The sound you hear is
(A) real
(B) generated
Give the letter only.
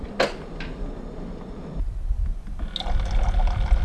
A